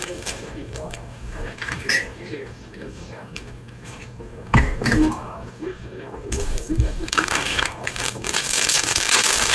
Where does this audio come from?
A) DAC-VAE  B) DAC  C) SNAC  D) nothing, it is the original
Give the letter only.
B